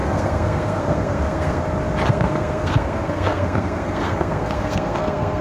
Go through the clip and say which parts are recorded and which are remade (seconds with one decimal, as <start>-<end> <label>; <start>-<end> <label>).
0.0-1.6 remade; 1.6-2.1 recorded; 2.1-5.4 remade